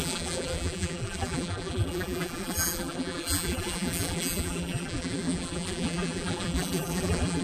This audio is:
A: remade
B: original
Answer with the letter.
A